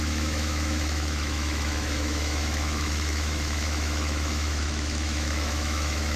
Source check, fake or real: fake